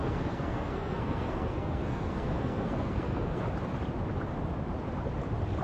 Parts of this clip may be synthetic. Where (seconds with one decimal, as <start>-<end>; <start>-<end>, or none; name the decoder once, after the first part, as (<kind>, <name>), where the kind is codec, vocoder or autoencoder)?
0.0-3.4 (codec, SNAC)